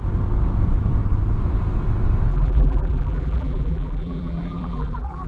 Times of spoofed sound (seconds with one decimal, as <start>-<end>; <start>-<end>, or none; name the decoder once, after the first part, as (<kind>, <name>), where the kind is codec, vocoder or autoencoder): 2.3-5.3 (vocoder, BigVGAN v2)